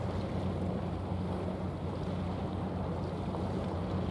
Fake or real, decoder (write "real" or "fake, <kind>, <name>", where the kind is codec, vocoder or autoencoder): real